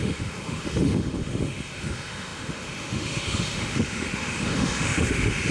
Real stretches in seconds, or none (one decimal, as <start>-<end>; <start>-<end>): none